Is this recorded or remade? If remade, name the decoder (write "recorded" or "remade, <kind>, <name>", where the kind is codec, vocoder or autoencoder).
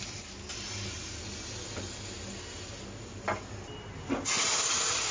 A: recorded